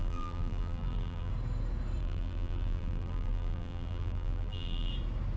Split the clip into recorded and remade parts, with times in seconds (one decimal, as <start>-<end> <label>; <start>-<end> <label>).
0.0-1.3 remade; 1.3-2.0 recorded; 2.0-4.9 remade; 4.9-5.4 recorded